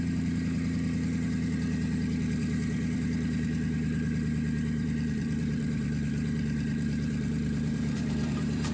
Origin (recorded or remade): remade